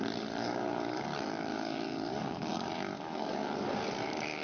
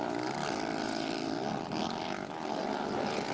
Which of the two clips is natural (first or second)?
second